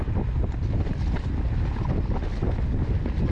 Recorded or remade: recorded